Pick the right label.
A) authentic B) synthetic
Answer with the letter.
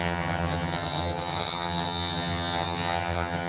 B